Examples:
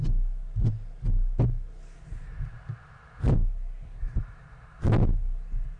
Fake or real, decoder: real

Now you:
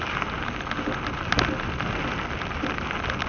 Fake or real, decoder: real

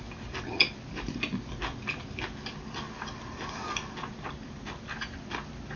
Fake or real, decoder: real